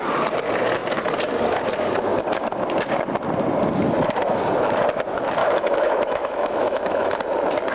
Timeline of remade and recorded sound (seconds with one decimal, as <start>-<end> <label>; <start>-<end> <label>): 0.0-5.4 recorded; 5.4-7.2 remade; 7.2-7.7 recorded